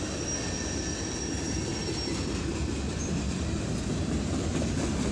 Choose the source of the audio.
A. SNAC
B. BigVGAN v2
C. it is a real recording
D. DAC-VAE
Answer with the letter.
C